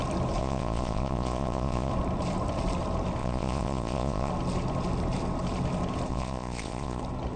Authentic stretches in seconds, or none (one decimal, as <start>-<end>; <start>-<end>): 0.0-0.4; 1.9-3.2; 4.3-6.1; 7.0-7.4